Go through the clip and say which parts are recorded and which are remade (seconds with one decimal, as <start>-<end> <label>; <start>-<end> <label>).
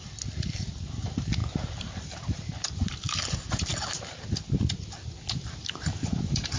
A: 0.0-6.6 recorded